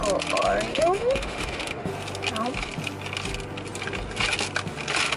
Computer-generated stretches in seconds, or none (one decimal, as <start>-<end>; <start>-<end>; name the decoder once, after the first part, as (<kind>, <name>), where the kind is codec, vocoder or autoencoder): 0.7-1.9 (autoencoder, DAC-VAE)